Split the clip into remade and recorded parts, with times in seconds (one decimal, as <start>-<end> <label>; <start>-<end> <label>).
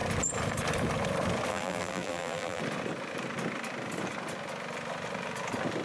0.0-1.5 recorded; 1.5-2.6 remade; 2.6-5.8 recorded